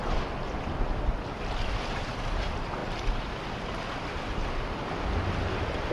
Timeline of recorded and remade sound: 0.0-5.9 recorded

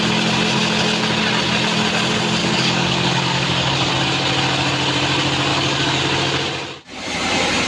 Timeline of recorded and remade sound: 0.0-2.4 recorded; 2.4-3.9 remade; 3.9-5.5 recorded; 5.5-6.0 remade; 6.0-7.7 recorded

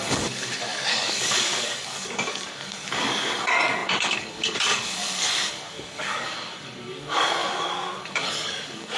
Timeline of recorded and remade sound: 0.0-9.0 remade

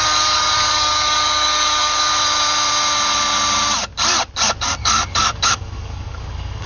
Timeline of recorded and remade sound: 0.0-2.1 remade; 2.1-4.8 recorded; 4.8-6.7 remade

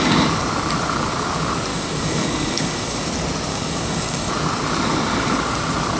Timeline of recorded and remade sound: 0.0-1.7 recorded; 1.7-3.1 remade; 3.1-3.5 recorded; 3.5-4.3 remade; 4.3-6.0 recorded

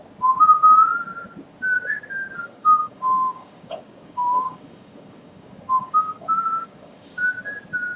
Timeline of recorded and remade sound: 0.0-2.4 recorded; 2.4-7.2 remade; 7.2-8.0 recorded

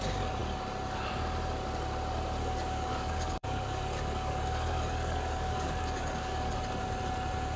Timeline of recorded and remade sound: 0.0-2.4 recorded; 2.4-6.5 remade; 6.5-7.6 recorded